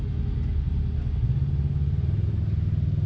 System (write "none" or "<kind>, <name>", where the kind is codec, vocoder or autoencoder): none